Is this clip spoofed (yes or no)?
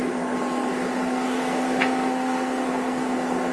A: yes